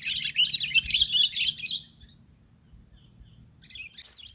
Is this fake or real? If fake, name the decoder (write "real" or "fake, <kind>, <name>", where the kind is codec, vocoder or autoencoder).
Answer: real